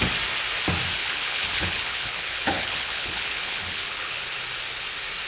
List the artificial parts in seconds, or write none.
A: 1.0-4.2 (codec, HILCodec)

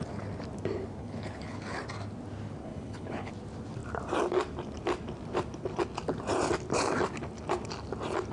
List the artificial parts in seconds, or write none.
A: 1.0-1.6 (codec, HILCodec); 2.6-3.3

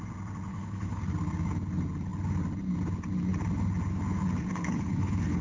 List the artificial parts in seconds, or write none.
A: 0.5-1.0 (codec, HILCodec); 4.5-5.4

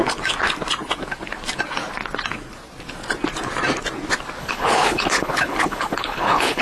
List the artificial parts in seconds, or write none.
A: 4.4-6.6 (codec, HILCodec)

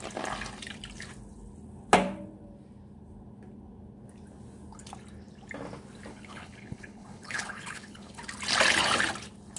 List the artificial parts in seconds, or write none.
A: 6.1-8.2 (codec, HILCodec)